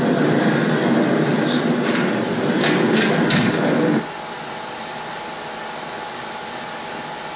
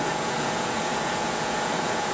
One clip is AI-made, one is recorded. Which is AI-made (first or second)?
second